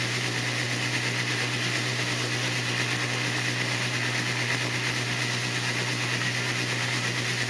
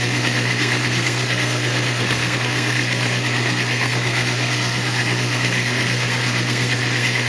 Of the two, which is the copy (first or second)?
second